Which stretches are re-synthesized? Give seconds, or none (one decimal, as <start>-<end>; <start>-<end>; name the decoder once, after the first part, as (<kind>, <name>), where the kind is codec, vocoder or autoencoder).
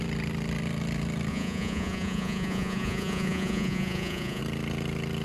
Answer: 1.3-4.4 (vocoder, Vocos)